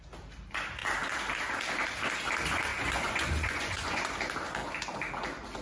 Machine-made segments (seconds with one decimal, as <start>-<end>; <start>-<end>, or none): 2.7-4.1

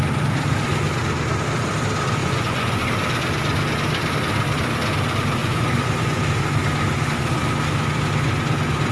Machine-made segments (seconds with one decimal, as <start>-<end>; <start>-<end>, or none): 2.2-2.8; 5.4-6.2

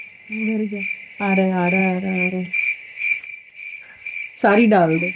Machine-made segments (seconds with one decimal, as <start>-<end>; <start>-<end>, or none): 1.8-4.4

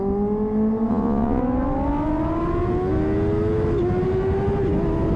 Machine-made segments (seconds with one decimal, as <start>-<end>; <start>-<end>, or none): 0.9-1.4